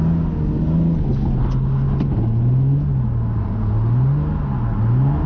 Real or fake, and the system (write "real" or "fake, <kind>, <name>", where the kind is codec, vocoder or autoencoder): real